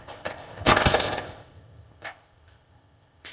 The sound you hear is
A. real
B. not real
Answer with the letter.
B